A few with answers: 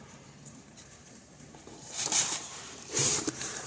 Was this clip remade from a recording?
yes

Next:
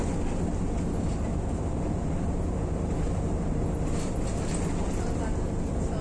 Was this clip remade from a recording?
no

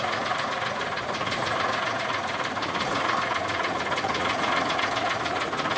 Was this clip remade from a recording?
yes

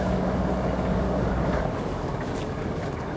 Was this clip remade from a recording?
yes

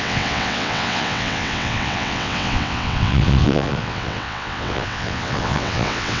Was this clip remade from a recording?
yes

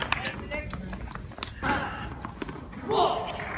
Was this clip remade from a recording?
no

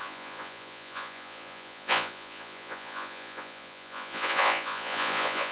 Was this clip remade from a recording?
yes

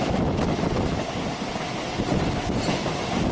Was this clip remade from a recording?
no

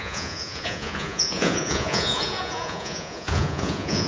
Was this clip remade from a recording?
yes